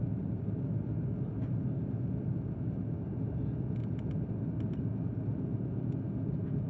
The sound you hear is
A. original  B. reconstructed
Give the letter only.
A